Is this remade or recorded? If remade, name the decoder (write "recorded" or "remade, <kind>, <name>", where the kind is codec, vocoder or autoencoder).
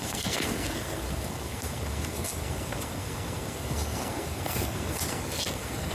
remade, codec, SNAC